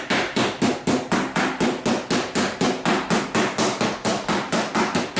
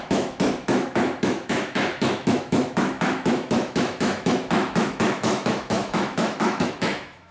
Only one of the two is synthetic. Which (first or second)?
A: second